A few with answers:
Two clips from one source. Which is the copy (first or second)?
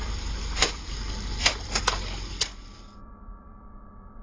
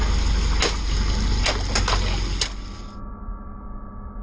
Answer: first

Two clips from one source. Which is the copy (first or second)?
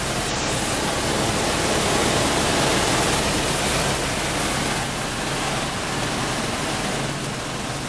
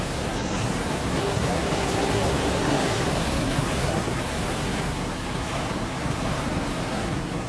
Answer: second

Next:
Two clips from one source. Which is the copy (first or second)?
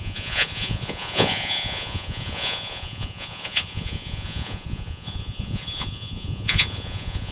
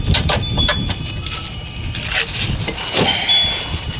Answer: first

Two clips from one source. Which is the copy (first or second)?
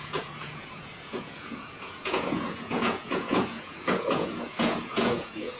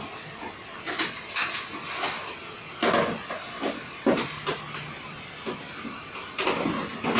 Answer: first